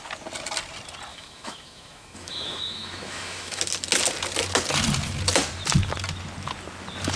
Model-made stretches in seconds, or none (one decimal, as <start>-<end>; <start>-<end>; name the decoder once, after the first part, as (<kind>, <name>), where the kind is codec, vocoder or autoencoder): 1.1-3.6 (autoencoder, DAC-VAE)